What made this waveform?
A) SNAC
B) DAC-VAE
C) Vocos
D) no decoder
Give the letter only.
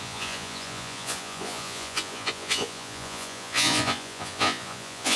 C